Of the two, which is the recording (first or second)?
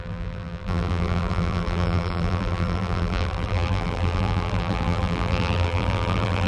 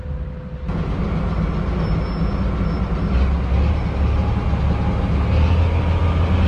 second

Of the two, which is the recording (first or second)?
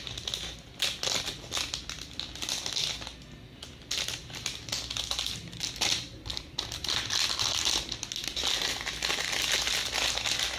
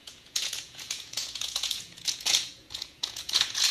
first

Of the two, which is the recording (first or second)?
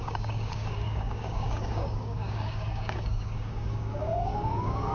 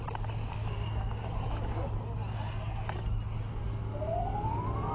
second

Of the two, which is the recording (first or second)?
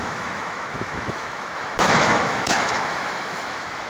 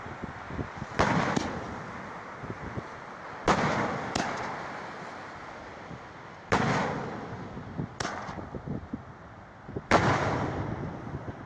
second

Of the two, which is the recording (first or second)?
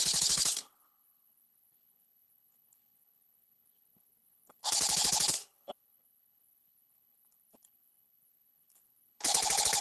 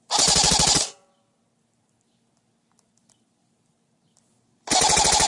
second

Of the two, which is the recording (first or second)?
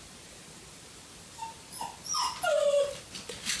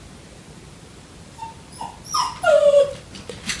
second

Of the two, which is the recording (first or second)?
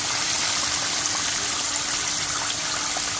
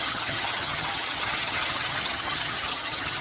first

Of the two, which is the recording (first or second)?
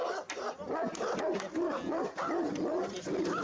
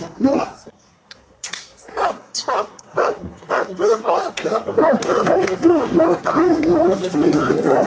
first